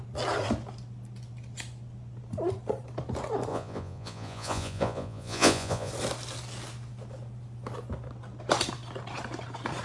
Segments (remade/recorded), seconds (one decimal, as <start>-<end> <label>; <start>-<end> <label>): 0.0-3.5 recorded; 3.5-5.9 remade; 5.9-9.8 recorded

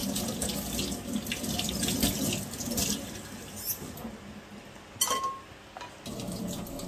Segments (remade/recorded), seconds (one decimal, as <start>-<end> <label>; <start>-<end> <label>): 0.0-6.9 recorded

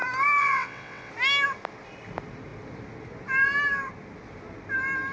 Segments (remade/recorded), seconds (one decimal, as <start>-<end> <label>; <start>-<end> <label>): 0.0-0.4 recorded; 0.4-1.1 remade; 1.1-5.1 recorded